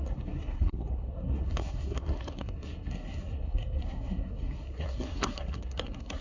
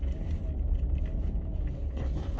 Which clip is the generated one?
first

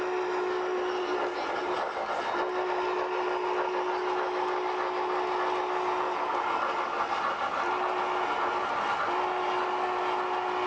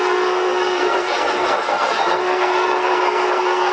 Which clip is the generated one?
second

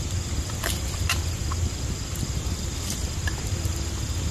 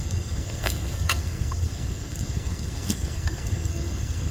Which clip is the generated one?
second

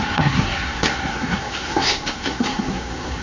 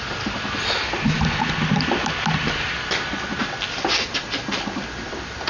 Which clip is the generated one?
first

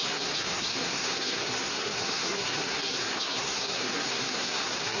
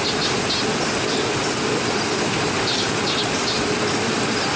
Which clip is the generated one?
first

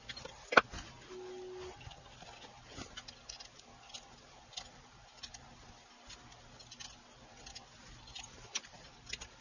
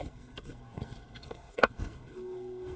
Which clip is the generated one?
second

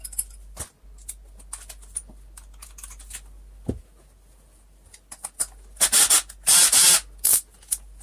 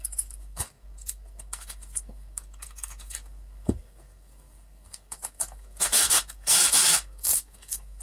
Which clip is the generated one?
second